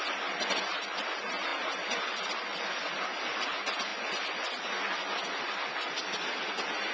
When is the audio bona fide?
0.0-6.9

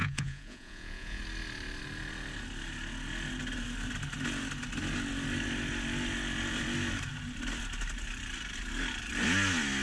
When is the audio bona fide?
1.2-9.8

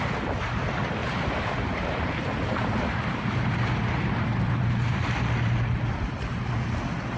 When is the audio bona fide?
0.0-1.0; 5.0-7.2